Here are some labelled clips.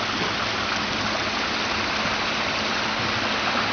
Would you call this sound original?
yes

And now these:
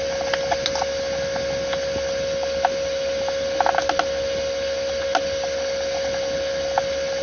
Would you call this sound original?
yes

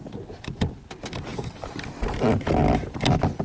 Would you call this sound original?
yes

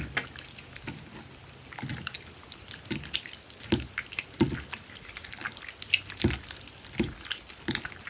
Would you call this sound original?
yes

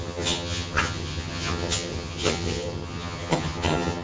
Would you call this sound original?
no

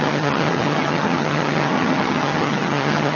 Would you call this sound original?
no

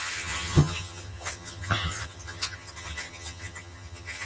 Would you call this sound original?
no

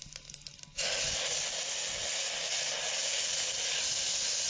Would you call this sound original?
yes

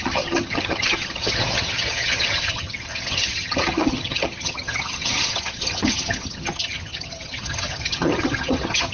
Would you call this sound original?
no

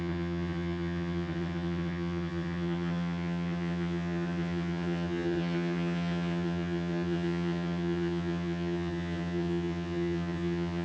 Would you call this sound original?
no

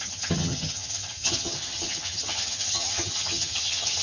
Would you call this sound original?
no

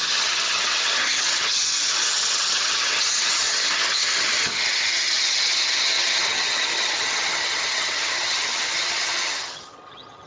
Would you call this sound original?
no